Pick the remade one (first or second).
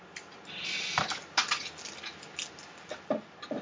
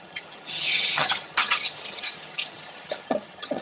second